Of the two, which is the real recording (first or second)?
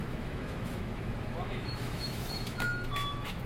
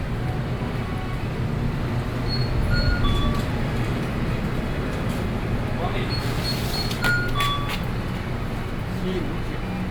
second